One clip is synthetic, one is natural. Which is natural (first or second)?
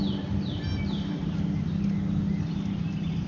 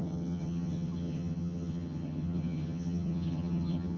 first